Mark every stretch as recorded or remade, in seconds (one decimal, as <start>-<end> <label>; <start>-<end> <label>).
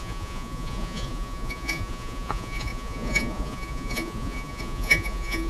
0.0-5.5 remade